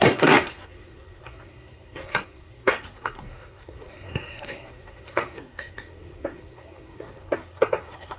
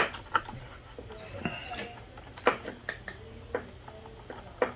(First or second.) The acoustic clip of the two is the second